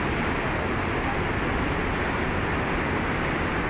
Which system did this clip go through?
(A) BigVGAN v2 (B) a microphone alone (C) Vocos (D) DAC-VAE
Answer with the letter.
B